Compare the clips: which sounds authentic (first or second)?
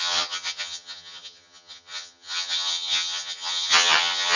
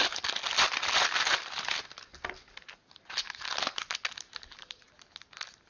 second